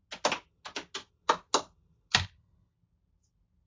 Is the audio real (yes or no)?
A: yes